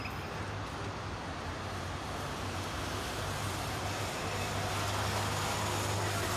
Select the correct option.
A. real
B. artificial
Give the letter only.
A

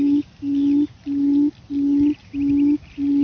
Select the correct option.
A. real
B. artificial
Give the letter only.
A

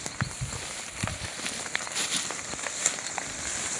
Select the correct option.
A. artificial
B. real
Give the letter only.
B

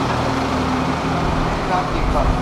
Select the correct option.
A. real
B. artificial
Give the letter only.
A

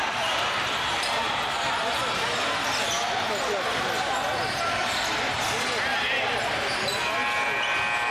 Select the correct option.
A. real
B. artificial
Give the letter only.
A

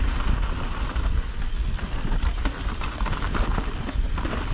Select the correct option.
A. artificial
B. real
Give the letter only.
B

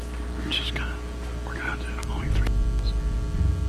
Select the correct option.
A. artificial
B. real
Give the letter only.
B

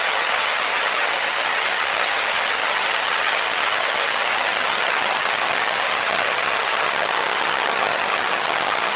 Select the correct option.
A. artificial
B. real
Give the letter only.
A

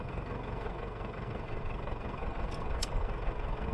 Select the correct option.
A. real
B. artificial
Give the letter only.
B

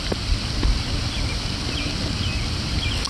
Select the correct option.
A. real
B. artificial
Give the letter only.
A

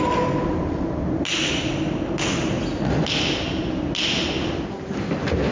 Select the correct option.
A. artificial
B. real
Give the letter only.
B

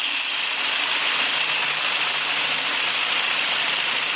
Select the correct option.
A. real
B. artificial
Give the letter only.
A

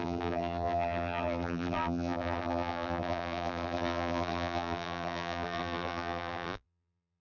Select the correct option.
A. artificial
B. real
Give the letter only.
A